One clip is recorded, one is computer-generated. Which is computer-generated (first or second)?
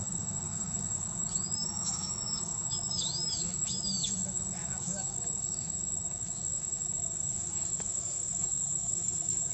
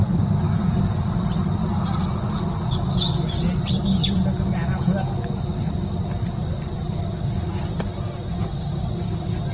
first